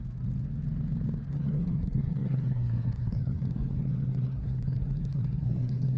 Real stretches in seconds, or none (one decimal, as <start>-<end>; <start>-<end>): 0.0-1.3